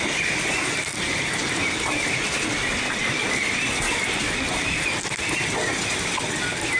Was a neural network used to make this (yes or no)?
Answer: no